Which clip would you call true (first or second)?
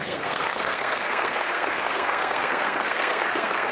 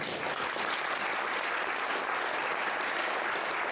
second